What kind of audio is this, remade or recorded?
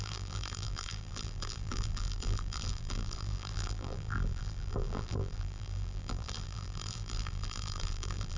remade